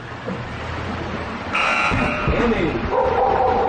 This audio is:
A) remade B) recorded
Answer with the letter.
A